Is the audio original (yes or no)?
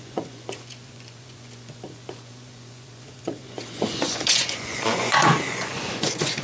no